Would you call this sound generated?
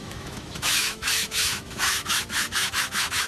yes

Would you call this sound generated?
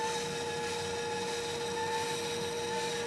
no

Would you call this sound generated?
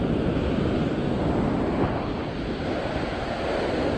no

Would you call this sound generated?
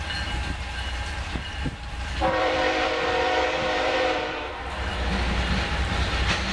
yes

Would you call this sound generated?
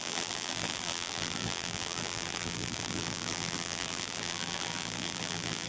yes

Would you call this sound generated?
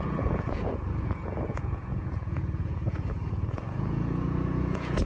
yes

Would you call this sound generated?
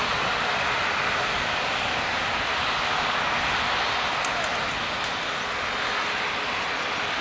no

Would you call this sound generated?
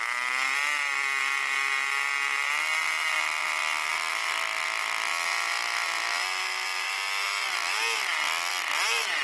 no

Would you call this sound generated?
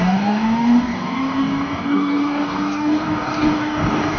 yes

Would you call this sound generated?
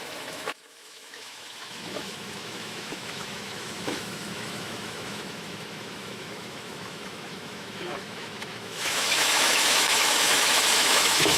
yes